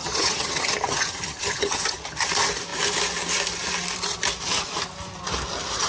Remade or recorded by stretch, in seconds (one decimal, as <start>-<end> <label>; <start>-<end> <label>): 0.0-2.3 remade; 2.3-5.9 recorded